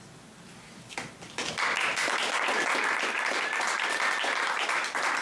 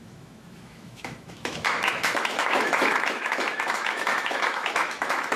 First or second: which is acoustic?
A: first